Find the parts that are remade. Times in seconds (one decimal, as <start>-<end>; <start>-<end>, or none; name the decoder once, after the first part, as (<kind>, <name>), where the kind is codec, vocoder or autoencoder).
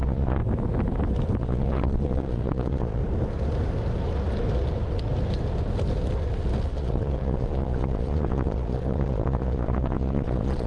0.0-0.4 (vocoder, Vocos); 1.4-3.0; 6.7-10.7